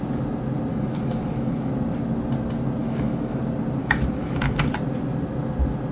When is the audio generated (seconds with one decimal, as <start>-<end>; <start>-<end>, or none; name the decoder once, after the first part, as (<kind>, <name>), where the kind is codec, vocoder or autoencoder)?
0.7-1.7 (autoencoder, DAC-VAE); 2.8-3.4; 3.8-4.7